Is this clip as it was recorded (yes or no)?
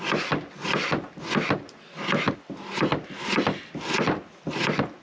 yes